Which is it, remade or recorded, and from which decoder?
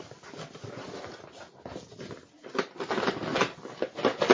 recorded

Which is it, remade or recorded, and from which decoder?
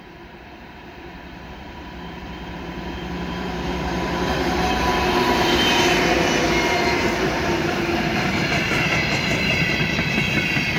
remade, vocoder, BigVGAN v2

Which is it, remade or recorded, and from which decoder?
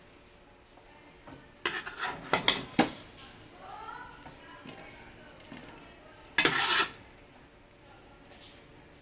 recorded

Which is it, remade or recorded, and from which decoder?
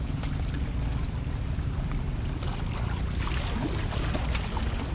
recorded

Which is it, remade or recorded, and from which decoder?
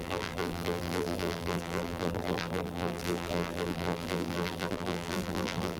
remade, vocoder, BigVGAN v2